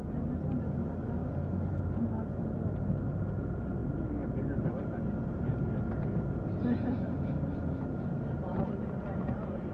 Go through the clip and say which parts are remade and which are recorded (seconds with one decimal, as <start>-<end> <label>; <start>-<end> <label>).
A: 0.0-1.2 recorded; 1.2-2.1 remade; 2.1-3.8 recorded; 3.8-8.6 remade; 8.6-9.7 recorded